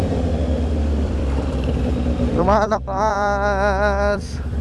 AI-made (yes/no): yes